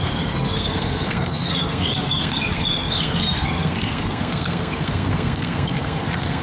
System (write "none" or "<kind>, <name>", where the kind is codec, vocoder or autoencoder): codec, SNAC